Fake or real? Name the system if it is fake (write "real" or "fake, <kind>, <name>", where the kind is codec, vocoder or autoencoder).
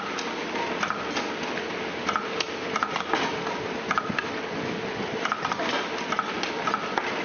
real